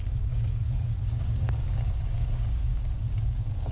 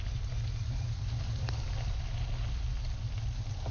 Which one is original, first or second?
second